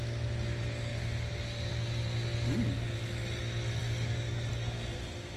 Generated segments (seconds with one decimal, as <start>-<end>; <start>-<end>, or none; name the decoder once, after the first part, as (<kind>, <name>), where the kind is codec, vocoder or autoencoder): 3.8-4.5 (codec, DAC)